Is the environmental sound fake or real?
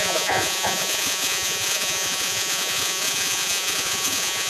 fake